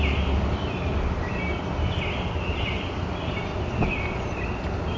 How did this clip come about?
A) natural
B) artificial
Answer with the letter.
A